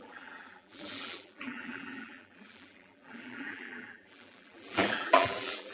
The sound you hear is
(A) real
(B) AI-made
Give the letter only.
B